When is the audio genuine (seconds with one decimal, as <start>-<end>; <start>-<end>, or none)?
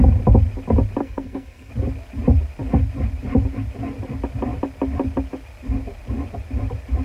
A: 0.0-1.0; 1.7-7.0